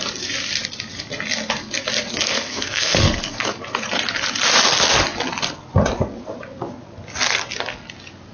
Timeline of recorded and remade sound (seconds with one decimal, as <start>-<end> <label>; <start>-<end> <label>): 0.0-2.1 recorded; 2.1-3.4 remade; 3.4-8.3 recorded